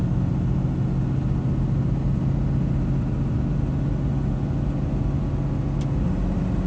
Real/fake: real